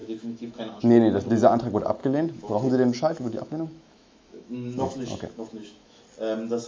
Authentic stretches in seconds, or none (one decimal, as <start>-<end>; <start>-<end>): 0.8-2.0; 6.0-6.7